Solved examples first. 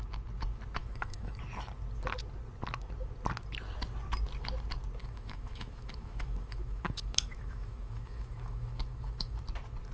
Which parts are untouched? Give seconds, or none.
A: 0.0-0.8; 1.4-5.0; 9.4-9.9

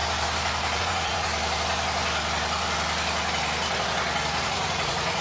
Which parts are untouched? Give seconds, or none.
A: 0.0-0.8; 1.3-4.4

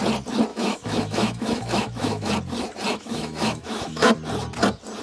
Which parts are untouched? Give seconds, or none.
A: 0.0-0.5; 2.3-2.9; 4.1-5.0

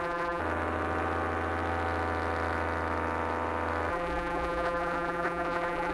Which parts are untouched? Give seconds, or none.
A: 0.4-3.9

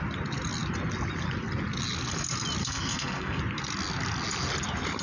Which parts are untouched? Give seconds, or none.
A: 0.0-2.6; 3.4-5.0